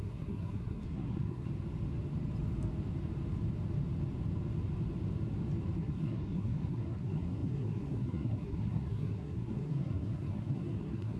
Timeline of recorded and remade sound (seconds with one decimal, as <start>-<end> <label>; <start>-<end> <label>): 0.0-1.5 remade; 1.5-5.8 recorded; 5.8-11.2 remade